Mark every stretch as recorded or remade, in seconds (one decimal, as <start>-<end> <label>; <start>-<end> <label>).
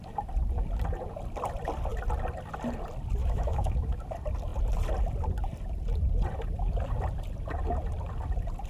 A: 0.0-3.2 recorded; 3.2-4.0 remade; 4.0-8.7 recorded